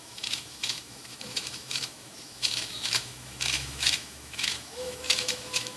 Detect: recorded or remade remade